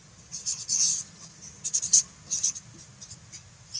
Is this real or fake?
real